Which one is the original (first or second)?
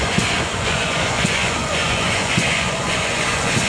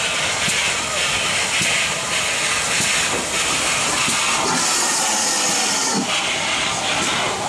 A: second